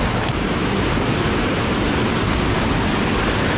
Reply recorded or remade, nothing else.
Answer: recorded